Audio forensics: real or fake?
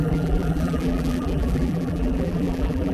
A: fake